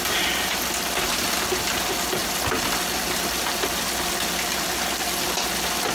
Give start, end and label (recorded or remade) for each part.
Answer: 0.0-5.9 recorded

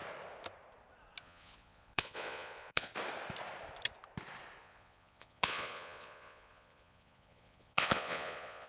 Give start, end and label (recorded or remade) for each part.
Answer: 0.0-1.2 recorded; 1.2-2.9 remade; 2.9-4.6 recorded; 4.6-8.7 remade